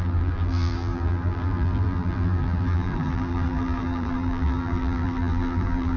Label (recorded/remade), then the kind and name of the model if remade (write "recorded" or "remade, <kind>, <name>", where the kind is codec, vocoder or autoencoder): remade, vocoder, BigVGAN v2